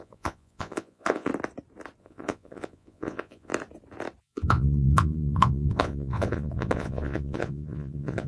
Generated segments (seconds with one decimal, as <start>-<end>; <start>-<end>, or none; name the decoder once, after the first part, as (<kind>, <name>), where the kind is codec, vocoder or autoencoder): 0.0-1.3 (vocoder, Vocos); 2.0-3.5; 4.2-8.3